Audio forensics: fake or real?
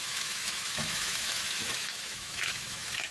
fake